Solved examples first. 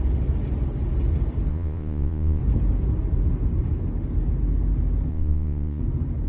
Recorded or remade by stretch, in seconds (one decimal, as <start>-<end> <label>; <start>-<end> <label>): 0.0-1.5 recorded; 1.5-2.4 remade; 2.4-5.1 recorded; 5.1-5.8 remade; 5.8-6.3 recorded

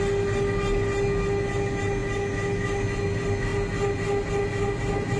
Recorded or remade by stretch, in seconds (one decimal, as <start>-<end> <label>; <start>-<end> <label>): 0.0-5.2 recorded

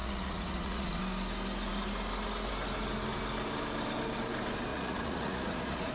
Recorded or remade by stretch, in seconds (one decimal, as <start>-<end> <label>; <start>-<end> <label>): 0.0-1.0 remade; 1.0-4.7 recorded; 4.7-5.9 remade

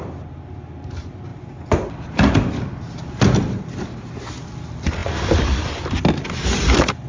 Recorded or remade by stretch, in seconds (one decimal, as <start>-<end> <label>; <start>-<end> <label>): 0.0-7.1 recorded

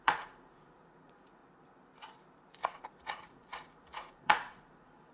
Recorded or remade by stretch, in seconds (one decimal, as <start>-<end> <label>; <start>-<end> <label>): 0.0-1.4 remade; 1.4-2.9 recorded; 2.9-5.1 remade